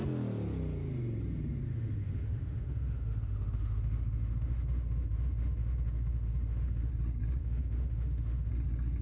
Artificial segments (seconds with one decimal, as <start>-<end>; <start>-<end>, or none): 1.7-6.9; 7.4-8.5